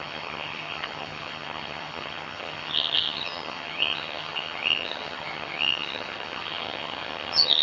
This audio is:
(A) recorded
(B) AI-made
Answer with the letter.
B